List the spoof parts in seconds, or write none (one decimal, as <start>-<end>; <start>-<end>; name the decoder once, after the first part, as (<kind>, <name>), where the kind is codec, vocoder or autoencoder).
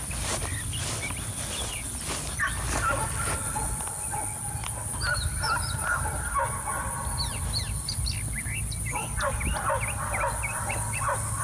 5.1-6.4 (vocoder, BigVGAN v2)